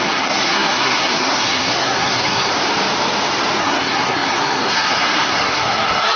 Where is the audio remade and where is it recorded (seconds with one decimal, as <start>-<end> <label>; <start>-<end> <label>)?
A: 0.0-2.5 remade; 2.5-3.6 recorded; 3.6-6.2 remade